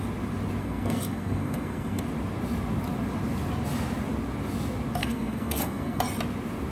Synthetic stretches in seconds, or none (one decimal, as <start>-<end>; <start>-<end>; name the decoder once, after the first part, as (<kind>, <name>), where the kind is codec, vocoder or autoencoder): 0.6-2.0 (codec, SNAC); 5.0-6.0